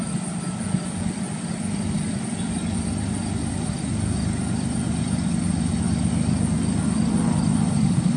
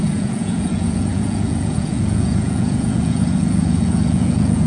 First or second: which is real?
first